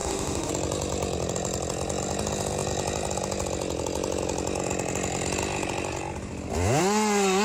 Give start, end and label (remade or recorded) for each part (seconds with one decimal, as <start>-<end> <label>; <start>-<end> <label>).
0.0-0.5 remade; 0.5-7.4 recorded